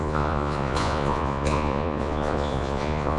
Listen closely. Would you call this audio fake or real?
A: fake